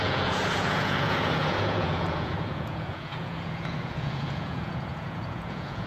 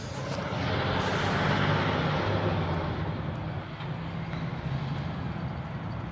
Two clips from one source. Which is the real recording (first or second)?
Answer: second